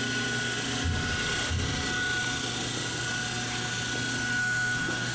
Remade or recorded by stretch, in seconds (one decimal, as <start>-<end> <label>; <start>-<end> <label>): 0.0-4.4 recorded; 4.4-5.1 remade